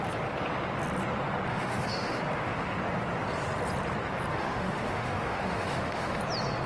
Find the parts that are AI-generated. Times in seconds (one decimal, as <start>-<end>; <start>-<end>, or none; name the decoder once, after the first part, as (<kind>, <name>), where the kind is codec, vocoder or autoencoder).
1.5-2.2 (autoencoder, DAC-VAE); 4.3-6.2